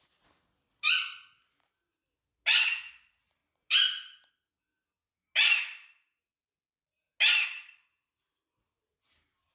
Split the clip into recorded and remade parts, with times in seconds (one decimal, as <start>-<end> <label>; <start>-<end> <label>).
0.0-9.5 recorded

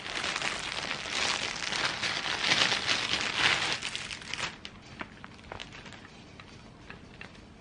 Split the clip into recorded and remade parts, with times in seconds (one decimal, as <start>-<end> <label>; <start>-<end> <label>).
0.0-7.6 recorded

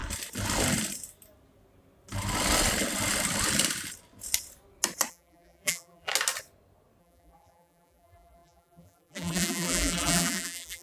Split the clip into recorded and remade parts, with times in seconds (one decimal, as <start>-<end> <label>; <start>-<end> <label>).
0.0-5.1 recorded; 5.1-6.1 remade; 6.1-7.0 recorded; 7.0-10.8 remade

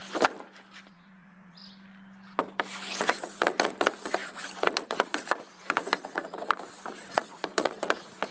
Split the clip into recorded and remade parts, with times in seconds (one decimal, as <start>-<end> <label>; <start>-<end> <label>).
0.0-0.9 recorded; 0.9-1.6 remade; 1.6-3.0 recorded; 3.0-8.3 remade

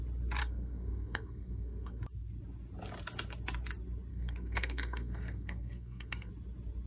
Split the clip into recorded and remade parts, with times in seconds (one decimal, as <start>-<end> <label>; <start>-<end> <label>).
0.0-0.4 recorded; 0.4-2.0 remade; 2.0-4.1 recorded; 4.1-6.3 remade; 6.3-6.9 recorded

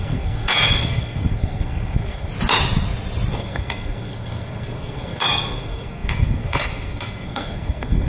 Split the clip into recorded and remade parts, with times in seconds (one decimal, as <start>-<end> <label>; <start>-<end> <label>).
0.0-2.3 remade; 2.3-3.3 recorded; 3.3-8.1 remade

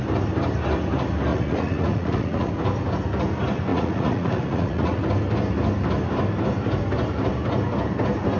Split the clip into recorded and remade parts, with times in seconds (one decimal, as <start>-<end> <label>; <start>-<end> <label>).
0.0-1.3 recorded; 1.3-2.5 remade; 2.5-3.7 recorded; 3.7-5.0 remade; 5.0-8.4 recorded

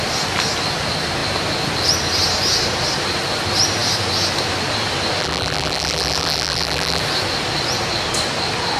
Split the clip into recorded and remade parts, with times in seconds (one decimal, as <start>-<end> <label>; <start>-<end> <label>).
0.0-5.2 recorded; 5.2-7.0 remade; 7.0-8.8 recorded